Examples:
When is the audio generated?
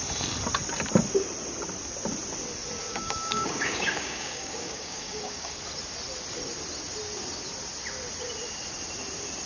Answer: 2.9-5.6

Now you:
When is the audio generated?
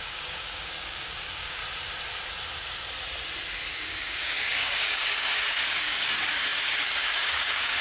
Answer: 0.0-1.6; 3.7-7.8